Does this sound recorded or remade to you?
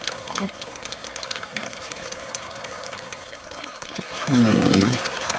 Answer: remade